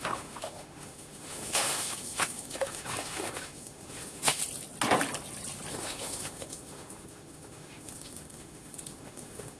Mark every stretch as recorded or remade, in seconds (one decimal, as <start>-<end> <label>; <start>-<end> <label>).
0.0-4.4 remade; 4.4-5.7 recorded; 5.7-9.6 remade